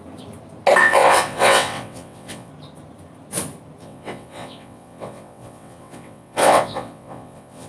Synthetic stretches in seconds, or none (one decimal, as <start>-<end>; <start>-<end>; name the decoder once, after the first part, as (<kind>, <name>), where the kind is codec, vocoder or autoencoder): 0.8-2.5 (vocoder, WaveNeXt); 3.8-7.7